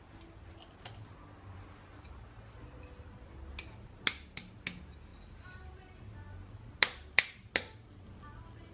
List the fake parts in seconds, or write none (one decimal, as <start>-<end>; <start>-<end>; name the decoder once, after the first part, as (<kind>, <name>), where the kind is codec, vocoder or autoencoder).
none